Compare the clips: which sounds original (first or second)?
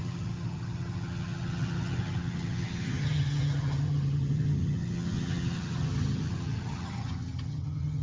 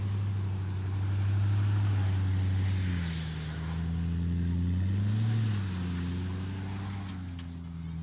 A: second